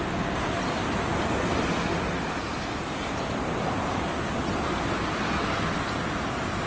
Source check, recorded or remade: recorded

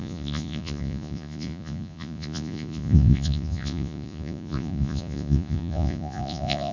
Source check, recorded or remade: remade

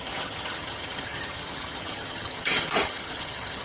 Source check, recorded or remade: remade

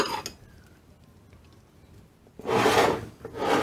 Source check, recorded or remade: recorded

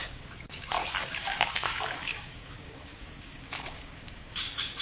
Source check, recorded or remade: remade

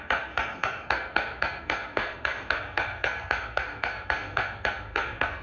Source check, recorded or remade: remade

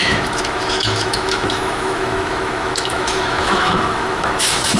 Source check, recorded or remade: remade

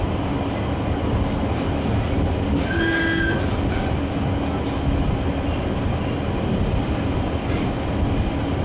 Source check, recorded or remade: recorded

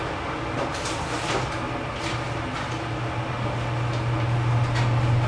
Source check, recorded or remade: recorded